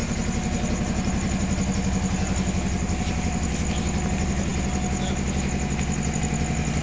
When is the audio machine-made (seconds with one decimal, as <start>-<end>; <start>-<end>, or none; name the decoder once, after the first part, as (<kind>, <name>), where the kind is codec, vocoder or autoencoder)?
none